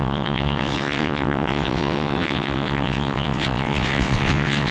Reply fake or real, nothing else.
fake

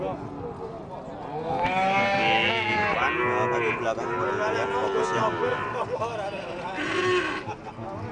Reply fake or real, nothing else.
real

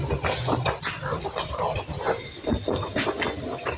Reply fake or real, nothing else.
real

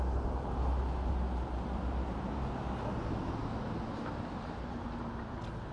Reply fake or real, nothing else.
real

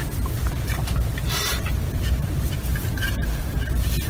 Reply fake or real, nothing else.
fake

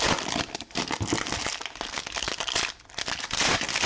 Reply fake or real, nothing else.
real